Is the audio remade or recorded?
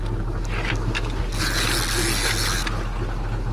recorded